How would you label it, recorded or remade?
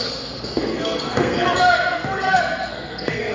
remade